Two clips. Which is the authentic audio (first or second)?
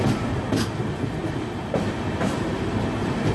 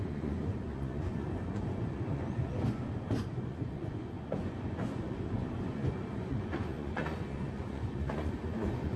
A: first